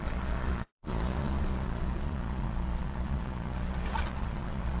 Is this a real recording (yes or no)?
no